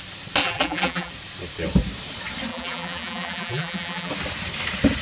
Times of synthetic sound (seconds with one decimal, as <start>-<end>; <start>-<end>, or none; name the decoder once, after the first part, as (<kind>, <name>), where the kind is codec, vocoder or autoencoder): 0.4-1.1 (vocoder, BigVGAN v2); 2.5-4.1